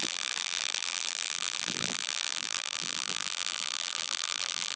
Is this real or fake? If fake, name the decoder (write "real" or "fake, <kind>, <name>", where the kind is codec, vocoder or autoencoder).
fake, vocoder, BigVGAN v2